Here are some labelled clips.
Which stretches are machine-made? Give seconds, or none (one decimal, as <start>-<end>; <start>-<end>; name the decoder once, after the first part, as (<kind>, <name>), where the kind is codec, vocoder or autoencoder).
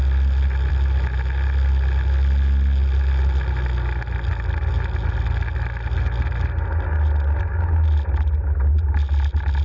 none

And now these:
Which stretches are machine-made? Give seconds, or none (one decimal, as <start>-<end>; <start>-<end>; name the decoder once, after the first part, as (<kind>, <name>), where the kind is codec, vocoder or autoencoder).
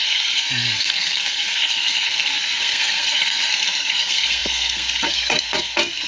0.0-6.1 (codec, SNAC)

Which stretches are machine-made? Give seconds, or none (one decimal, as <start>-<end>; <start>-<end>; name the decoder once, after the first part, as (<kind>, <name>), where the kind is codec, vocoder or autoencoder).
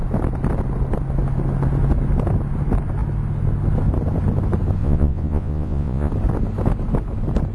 4.8-6.1 (vocoder, Vocos)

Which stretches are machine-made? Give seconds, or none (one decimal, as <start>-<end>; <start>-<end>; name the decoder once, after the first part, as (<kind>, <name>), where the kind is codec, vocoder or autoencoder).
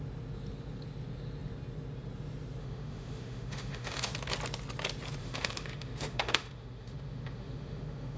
2.6-4.1 (autoencoder, DAC-VAE); 5.2-8.2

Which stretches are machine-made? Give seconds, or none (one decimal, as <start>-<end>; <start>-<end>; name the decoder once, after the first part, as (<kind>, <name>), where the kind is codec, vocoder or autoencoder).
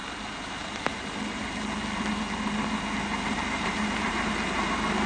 3.3-4.3 (vocoder, BigVGAN v2)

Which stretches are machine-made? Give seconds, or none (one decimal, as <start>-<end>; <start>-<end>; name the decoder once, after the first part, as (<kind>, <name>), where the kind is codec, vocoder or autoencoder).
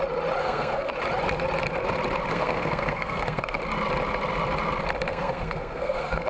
0.4-0.9 (codec, SNAC); 2.3-3.6; 5.1-6.3